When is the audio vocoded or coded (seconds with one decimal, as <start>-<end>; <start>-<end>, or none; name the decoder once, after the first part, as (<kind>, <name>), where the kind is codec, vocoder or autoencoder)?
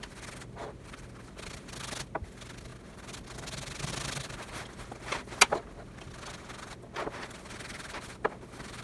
none